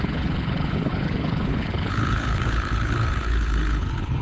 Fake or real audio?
fake